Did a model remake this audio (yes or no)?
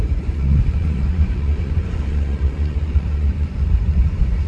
yes